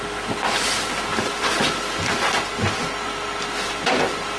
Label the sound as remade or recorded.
recorded